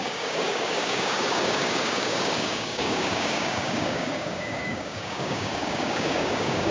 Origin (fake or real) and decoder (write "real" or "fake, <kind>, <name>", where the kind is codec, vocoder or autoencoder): fake, codec, DAC